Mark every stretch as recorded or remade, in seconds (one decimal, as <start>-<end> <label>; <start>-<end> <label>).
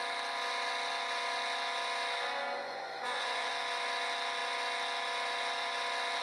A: 0.0-2.6 recorded; 2.6-3.5 remade; 3.5-6.2 recorded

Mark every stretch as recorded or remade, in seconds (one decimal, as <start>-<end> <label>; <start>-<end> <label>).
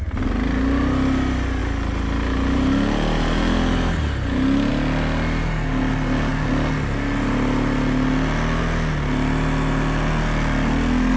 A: 0.0-11.2 recorded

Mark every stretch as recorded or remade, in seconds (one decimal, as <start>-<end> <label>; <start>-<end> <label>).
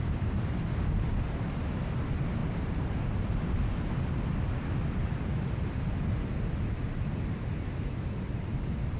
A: 0.0-9.0 recorded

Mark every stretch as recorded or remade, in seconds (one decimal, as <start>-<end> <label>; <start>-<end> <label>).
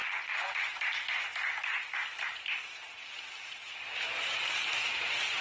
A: 0.0-0.7 remade; 0.7-5.4 recorded